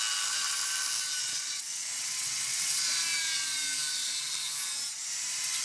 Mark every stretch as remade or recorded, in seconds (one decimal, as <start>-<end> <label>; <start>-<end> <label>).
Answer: 0.0-1.2 recorded; 1.2-2.8 remade; 2.8-5.6 recorded